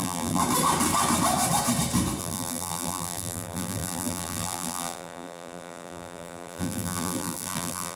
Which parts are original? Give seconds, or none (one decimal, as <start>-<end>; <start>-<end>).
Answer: 0.4-2.2